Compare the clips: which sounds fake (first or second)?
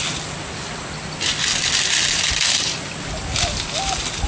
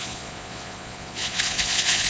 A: second